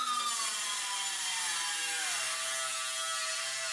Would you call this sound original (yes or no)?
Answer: yes